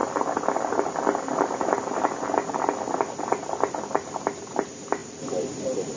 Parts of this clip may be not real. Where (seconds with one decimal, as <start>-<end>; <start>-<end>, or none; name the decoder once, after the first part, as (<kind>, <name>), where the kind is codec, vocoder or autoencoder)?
none